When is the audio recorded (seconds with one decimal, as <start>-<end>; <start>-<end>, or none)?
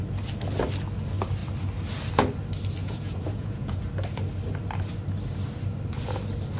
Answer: 0.0-2.8; 3.8-6.6